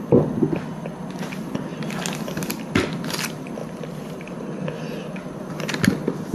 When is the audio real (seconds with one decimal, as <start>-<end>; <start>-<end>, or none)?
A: 0.0-6.3